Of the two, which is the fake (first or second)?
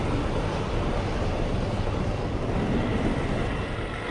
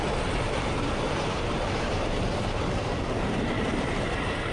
second